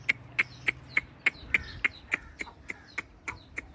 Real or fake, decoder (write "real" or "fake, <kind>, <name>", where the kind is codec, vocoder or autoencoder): real